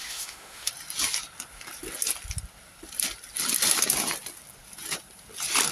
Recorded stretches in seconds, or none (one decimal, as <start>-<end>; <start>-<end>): 0.7-5.7